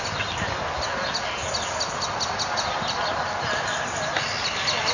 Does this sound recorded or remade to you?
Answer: recorded